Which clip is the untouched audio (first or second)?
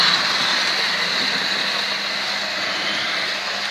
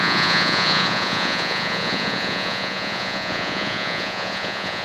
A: first